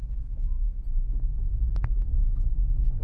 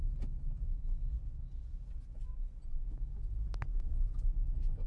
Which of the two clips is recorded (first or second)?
second